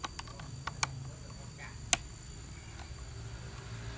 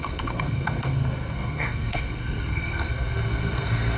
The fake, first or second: second